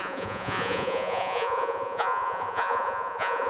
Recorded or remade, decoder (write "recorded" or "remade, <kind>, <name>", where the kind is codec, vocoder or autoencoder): remade, vocoder, Vocos